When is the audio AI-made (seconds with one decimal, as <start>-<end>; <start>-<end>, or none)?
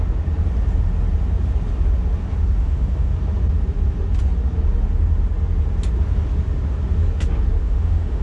2.6-3.1; 7.6-8.2